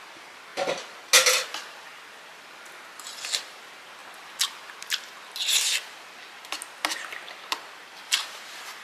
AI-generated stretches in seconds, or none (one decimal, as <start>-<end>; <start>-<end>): none